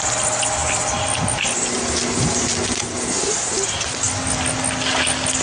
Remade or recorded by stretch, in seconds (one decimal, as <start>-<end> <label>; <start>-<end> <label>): 0.0-5.4 recorded